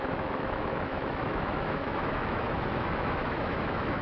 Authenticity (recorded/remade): remade